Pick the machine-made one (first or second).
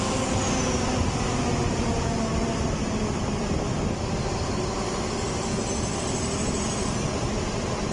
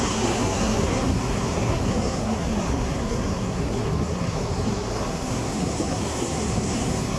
second